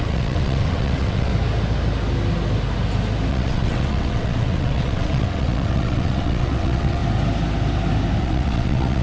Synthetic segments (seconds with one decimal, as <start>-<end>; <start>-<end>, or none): 0.0-1.3; 3.3-7.0; 8.2-9.0